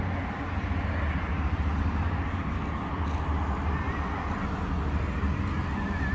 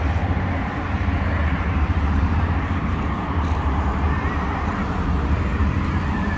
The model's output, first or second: second